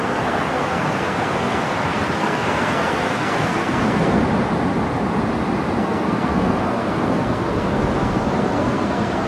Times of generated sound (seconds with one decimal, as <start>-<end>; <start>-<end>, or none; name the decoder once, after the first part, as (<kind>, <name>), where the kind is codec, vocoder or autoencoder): 0.0-4.2 (codec, SNAC); 5.8-9.3

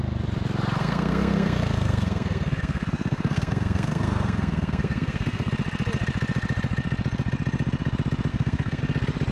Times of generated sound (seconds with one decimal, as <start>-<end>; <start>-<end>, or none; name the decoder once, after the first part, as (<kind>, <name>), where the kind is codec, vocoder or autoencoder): 0.8-5.5 (codec, SNAC); 8.3-8.8

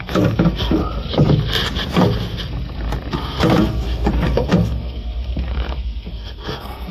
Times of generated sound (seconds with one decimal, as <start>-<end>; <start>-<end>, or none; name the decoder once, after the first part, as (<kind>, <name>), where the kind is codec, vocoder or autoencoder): 0.0-0.8 (codec, SNAC); 3.6-6.9

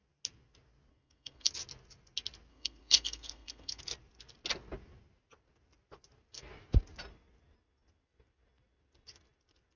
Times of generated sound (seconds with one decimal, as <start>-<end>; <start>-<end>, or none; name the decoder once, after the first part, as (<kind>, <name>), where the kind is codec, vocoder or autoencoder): 0.9-1.5 (codec, SNAC); 2.5-3.8

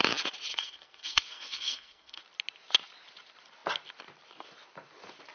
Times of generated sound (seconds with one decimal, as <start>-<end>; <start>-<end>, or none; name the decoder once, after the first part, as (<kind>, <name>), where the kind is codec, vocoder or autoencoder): 0.5-2.2 (codec, SNAC)

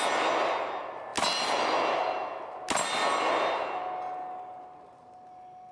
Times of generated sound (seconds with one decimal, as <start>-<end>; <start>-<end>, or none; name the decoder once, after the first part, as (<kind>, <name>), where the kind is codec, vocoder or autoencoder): none

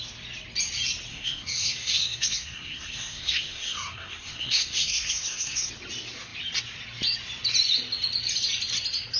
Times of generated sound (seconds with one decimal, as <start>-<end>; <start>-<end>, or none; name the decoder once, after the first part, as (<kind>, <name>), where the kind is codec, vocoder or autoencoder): 1.1-5.7 (codec, SNAC)